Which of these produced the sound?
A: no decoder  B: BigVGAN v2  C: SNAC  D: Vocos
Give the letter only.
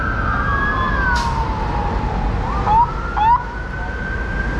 A